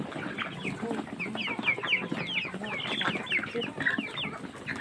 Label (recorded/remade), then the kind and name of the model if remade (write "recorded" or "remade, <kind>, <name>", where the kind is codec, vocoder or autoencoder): recorded